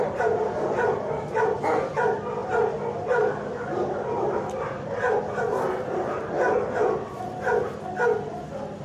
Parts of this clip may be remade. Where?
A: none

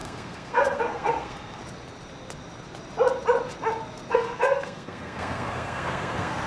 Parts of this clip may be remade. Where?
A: 0.0-1.6 (codec, SNAC); 4.1-6.5

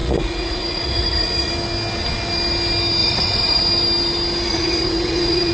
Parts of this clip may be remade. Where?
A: 0.0-1.5 (vocoder, Vocos); 3.0-3.6; 4.5-5.5

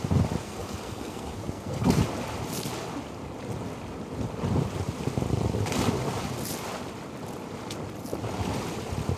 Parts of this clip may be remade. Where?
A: 0.4-2.0 (codec, SNAC)

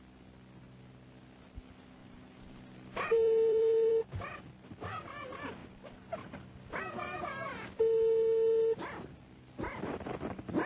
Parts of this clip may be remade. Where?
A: 2.0-3.9 (vocoder, BigVGAN v2); 5.6-6.8

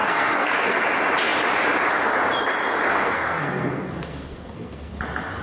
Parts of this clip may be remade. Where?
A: 0.0-0.9 (codec, SNAC); 2.9-4.9

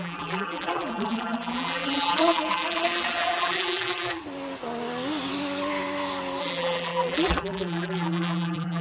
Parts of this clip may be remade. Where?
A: 0.0-4.2 (vocoder, BigVGAN v2); 6.4-8.8